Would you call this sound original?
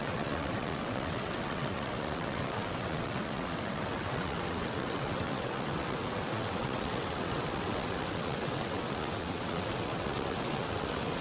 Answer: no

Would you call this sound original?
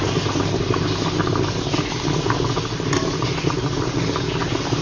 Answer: yes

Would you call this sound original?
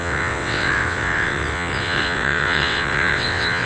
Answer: no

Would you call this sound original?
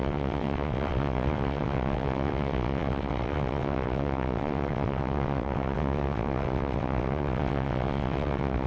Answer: no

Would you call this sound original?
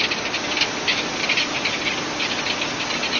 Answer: yes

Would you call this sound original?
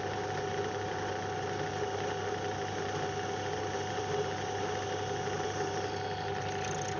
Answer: yes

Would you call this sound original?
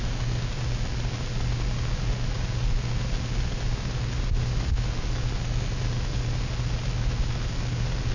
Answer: yes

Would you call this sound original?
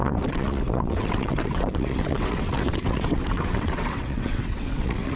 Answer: no